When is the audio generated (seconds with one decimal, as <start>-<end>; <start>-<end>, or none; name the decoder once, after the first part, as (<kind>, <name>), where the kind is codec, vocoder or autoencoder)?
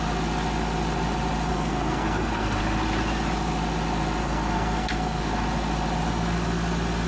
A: 1.5-2.6 (codec, SNAC); 4.2-5.2